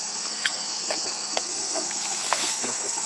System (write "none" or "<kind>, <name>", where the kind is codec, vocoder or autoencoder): codec, SNAC